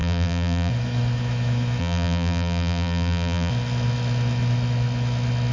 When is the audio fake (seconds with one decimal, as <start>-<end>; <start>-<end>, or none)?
0.0-0.7; 1.8-3.5